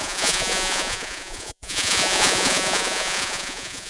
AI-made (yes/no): yes